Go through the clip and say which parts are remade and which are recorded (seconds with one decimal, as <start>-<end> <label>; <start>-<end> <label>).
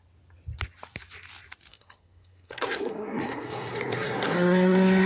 0.0-1.7 recorded; 1.7-5.1 remade